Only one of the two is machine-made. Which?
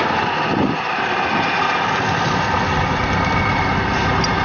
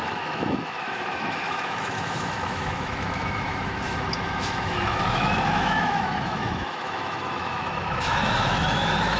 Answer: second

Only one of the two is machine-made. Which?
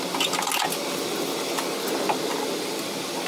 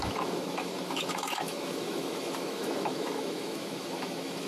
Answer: second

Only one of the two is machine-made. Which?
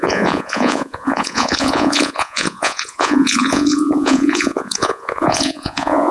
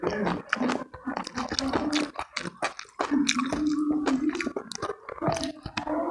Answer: first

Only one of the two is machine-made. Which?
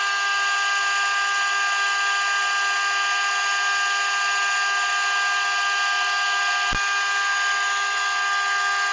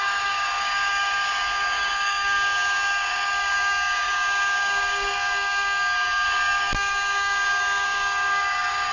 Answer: second